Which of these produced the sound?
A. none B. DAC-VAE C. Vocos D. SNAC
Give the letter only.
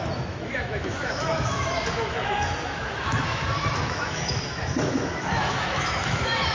B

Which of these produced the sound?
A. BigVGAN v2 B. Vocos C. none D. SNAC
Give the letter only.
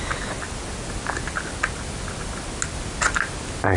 C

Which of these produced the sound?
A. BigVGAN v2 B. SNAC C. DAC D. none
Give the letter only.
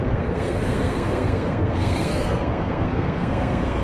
B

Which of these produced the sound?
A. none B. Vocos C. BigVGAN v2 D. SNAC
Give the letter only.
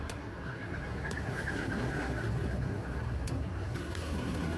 D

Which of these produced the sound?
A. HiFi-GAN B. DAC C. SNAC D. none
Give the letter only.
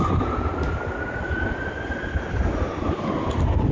D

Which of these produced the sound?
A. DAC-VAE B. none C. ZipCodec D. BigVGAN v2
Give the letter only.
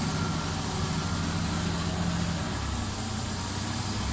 B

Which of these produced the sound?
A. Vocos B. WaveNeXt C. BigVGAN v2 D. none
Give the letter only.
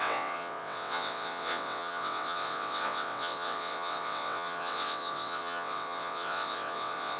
B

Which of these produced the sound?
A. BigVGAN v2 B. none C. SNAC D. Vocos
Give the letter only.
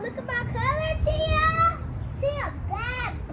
B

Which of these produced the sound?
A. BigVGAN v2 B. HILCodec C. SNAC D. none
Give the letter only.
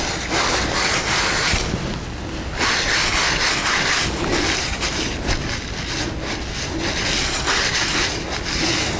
D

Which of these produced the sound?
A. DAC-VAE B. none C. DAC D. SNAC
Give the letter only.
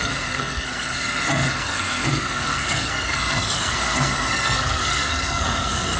D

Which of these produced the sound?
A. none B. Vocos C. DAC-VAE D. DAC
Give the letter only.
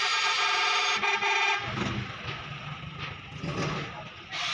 A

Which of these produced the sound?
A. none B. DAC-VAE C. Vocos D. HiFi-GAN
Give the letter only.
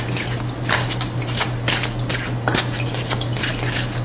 A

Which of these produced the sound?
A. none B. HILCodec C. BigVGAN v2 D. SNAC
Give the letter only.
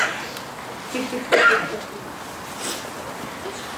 A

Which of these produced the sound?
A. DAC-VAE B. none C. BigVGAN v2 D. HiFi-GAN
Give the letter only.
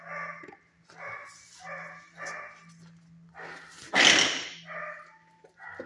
B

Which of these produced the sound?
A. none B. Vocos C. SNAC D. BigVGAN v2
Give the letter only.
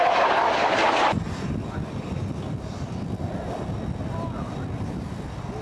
A